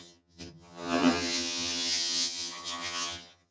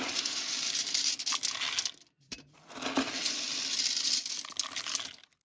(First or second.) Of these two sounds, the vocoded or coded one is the first